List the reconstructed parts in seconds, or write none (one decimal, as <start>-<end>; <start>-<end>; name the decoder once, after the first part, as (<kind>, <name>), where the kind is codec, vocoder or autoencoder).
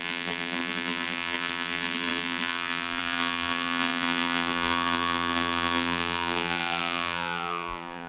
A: 0.0-8.1 (vocoder, BigVGAN v2)